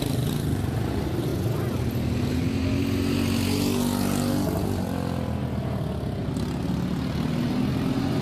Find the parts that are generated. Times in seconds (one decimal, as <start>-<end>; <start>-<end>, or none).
none